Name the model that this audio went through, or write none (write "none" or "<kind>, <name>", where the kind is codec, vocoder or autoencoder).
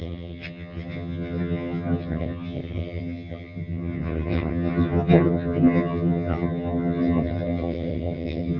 vocoder, HiFi-GAN